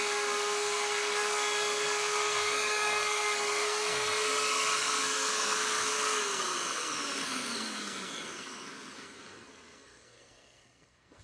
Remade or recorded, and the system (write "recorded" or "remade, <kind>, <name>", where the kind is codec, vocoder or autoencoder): remade, codec, SNAC